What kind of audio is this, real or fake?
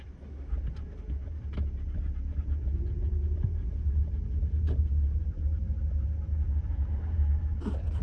real